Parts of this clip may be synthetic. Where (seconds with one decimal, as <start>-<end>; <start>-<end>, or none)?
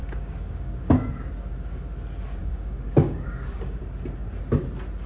0.0-1.1; 2.4-3.8